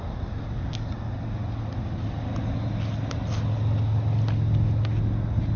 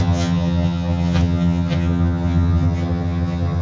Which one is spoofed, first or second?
second